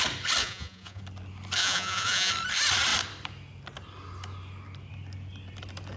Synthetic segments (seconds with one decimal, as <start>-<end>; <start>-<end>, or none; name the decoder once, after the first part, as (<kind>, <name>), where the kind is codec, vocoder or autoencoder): 0.4-1.0 (vocoder, Vocos); 1.6-2.3